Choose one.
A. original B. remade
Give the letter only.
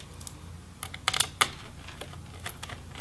A